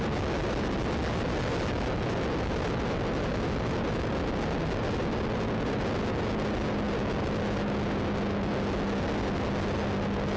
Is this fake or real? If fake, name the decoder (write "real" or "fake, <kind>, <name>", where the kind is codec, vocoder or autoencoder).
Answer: real